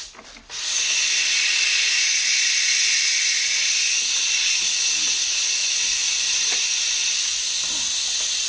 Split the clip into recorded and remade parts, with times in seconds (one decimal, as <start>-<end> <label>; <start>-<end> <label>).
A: 0.0-5.6 recorded; 5.6-7.4 remade; 7.4-8.5 recorded